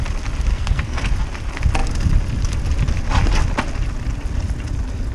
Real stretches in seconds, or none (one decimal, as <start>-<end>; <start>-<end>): 0.0-0.5; 1.1-5.1